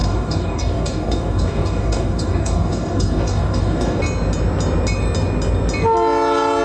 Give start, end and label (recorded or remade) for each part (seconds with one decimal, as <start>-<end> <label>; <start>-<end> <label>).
0.0-4.0 remade; 4.0-6.6 recorded